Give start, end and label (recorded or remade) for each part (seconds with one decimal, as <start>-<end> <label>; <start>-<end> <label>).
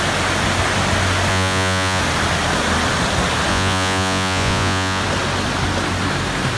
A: 0.0-1.3 recorded; 1.3-2.0 remade; 2.0-3.5 recorded; 3.5-5.0 remade; 5.0-6.6 recorded